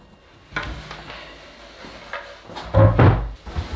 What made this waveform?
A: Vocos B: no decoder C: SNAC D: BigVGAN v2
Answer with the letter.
B